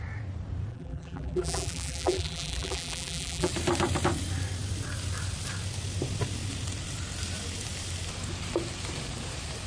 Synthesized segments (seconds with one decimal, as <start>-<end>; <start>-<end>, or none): 0.7-3.5